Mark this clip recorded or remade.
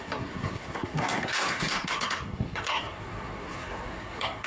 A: remade